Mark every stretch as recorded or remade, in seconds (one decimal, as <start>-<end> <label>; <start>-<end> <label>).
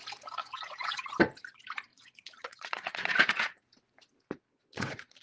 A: 0.0-0.4 recorded; 0.4-1.2 remade; 1.2-1.9 recorded; 1.9-3.6 remade; 3.6-4.5 recorded; 4.5-5.2 remade